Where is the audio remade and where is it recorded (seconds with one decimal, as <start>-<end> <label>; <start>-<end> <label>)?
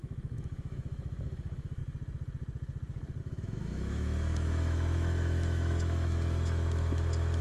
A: 0.0-1.8 remade; 1.8-3.2 recorded; 3.2-7.4 remade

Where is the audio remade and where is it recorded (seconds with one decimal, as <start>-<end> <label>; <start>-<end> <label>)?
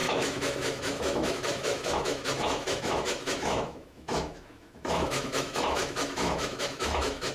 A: 0.0-7.3 remade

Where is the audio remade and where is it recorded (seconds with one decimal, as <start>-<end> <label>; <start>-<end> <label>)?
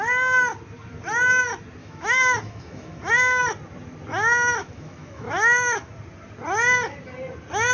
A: 0.0-1.8 recorded; 1.8-3.1 remade; 3.1-4.6 recorded; 4.6-5.9 remade; 5.9-7.7 recorded